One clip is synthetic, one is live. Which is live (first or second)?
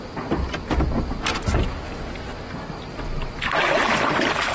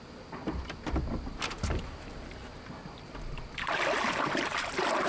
first